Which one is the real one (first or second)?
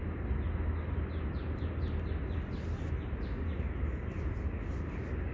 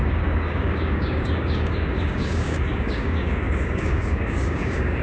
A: first